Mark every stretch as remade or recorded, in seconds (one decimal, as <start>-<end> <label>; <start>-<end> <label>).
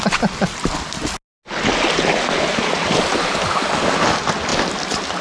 0.0-5.2 recorded